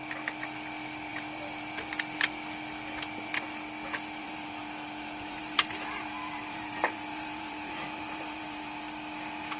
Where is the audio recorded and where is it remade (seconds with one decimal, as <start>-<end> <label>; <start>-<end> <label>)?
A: 0.0-1.1 recorded; 1.1-1.9 remade; 1.9-4.2 recorded; 4.2-8.8 remade; 8.8-9.6 recorded